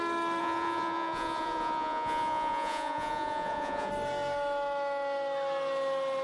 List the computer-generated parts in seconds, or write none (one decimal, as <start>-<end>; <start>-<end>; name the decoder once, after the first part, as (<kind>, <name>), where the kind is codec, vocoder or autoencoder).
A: 0.4-3.9 (vocoder, Vocos)